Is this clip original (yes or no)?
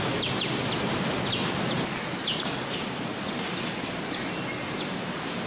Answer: yes